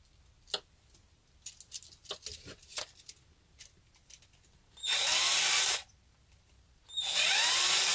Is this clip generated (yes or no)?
no